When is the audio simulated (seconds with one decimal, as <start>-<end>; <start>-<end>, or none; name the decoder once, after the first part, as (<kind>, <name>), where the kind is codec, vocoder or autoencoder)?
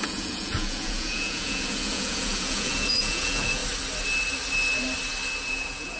0.0-3.6 (vocoder, Vocos); 5.5-6.0